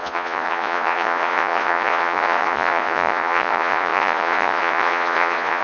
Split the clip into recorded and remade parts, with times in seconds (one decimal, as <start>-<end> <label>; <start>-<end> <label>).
0.0-5.6 remade